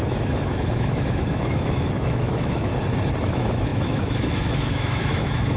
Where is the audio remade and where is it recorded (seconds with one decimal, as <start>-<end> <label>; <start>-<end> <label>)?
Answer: 0.0-2.7 remade; 2.7-3.3 recorded; 3.3-5.6 remade